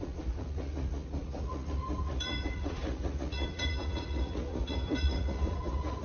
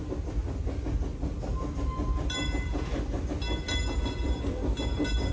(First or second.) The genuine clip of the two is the second